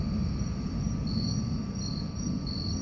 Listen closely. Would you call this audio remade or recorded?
recorded